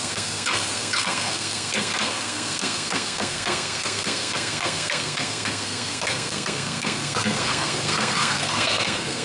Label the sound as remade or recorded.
remade